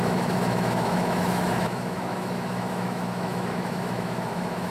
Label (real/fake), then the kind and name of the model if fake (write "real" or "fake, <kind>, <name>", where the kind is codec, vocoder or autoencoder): fake, autoencoder, DAC-VAE